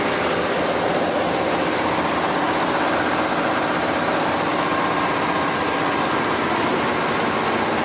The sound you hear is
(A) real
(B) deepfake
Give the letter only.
A